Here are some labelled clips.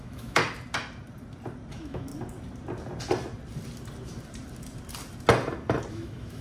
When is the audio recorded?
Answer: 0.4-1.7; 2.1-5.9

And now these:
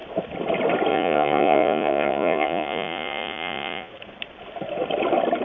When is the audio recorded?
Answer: 0.0-0.9; 3.9-5.4

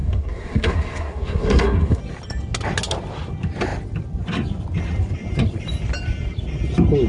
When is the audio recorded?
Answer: 2.0-7.1

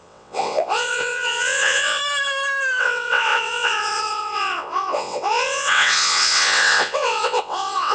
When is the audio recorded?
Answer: 2.0-2.8

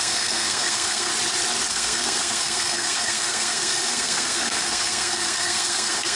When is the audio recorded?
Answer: 1.1-1.7